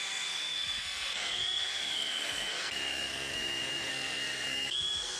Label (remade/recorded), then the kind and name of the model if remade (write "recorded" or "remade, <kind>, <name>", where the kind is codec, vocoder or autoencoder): remade, codec, SNAC